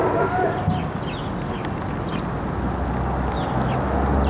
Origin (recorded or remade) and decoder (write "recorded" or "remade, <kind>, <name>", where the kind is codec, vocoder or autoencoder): recorded